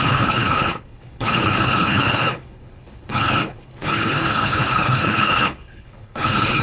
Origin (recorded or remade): remade